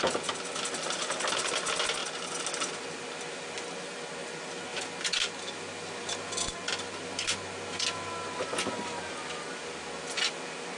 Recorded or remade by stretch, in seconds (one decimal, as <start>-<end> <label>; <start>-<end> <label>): 0.0-10.8 recorded